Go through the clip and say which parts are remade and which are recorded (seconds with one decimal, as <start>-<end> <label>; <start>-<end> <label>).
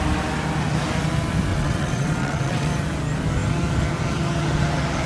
0.0-1.5 recorded; 1.5-2.7 remade; 2.7-5.1 recorded